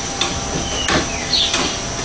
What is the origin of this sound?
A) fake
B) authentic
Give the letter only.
B